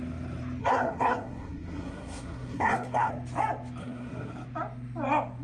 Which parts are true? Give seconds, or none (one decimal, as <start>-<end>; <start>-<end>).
0.0-0.6; 3.1-3.8; 4.3-5.4